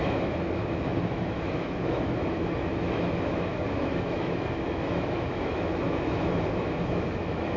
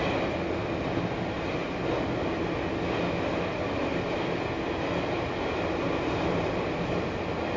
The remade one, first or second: first